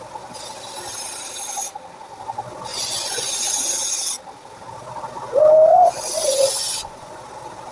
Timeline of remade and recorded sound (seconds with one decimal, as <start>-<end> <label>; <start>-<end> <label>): 0.0-2.7 recorded; 2.7-3.7 remade; 3.7-5.7 recorded; 5.7-7.2 remade; 7.2-7.7 recorded